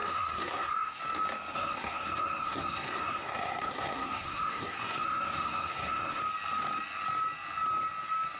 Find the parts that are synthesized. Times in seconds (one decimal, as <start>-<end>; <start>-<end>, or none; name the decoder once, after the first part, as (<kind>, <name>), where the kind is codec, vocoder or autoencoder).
0.0-1.0 (codec, SNAC); 1.5-6.2